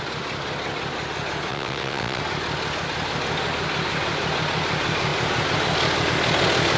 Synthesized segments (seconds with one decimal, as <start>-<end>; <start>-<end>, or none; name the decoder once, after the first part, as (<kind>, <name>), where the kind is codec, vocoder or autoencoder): 1.5-2.2 (vocoder, WaveNeXt)